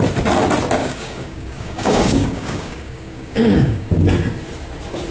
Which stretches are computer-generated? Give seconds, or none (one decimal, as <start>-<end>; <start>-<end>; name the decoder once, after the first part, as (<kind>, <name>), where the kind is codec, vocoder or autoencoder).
0.8-3.9 (codec, DAC)